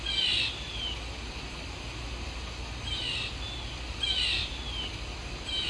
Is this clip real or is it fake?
real